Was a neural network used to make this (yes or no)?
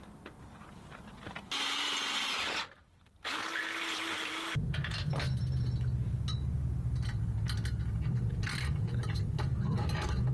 no